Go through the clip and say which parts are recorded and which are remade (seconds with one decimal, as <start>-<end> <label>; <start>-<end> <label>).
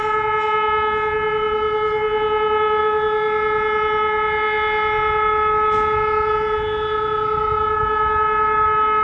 0.0-9.0 recorded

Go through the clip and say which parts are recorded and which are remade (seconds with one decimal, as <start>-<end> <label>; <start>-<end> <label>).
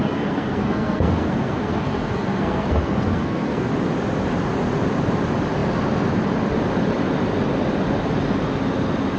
0.0-3.7 remade; 3.7-9.2 recorded